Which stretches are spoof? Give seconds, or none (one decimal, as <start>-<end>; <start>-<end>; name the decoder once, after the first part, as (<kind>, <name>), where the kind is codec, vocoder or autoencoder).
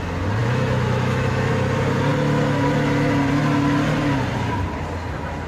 0.4-1.5 (autoencoder, DAC-VAE)